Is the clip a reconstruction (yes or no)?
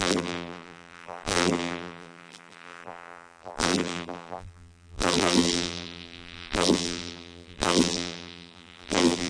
yes